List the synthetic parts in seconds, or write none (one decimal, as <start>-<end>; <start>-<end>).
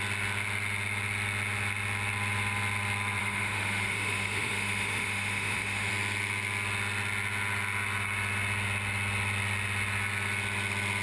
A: 3.2-5.9